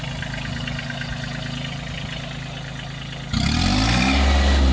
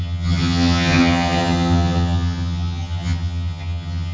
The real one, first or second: first